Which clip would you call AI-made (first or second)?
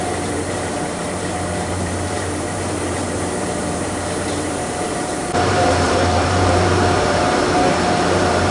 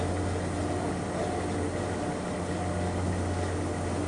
first